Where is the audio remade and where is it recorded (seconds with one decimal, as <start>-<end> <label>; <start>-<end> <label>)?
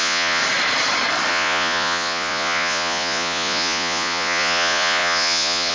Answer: 0.0-0.4 remade; 0.4-1.3 recorded; 1.3-5.7 remade